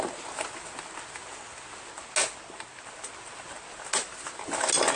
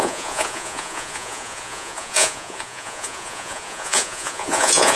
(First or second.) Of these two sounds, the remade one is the second